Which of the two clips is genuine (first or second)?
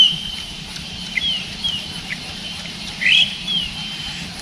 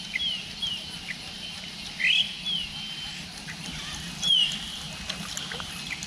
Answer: second